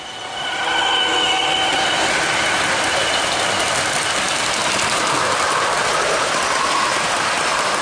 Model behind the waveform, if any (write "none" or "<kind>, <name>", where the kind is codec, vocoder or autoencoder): none